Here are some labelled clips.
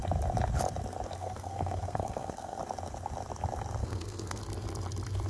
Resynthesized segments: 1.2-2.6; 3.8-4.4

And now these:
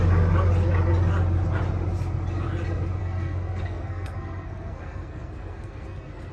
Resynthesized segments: 3.0-6.3